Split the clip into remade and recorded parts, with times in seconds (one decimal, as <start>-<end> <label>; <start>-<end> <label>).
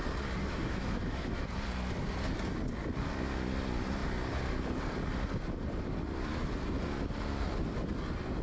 0.0-0.4 recorded; 0.4-1.5 remade; 1.5-8.4 recorded